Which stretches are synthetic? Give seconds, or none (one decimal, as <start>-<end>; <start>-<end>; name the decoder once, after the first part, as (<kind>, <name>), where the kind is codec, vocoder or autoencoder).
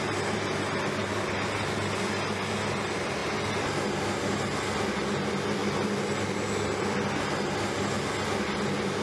none